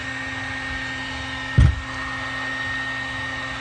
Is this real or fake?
real